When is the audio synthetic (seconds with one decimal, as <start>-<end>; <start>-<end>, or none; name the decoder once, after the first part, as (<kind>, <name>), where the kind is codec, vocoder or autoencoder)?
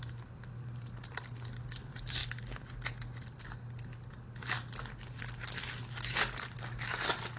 none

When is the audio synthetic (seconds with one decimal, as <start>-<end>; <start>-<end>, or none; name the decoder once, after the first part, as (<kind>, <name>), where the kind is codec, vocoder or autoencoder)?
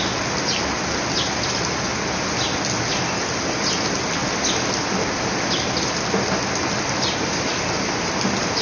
none